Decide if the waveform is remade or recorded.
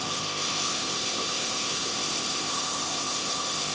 remade